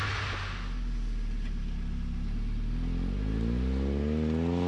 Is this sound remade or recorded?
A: recorded